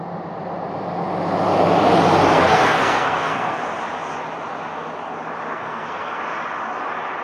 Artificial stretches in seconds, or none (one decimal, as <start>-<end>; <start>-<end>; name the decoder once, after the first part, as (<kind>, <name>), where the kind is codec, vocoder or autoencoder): 2.3-3.6 (codec, SNAC); 5.5-6.2